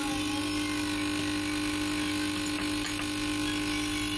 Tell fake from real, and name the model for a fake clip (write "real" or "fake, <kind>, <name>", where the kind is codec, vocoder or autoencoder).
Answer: real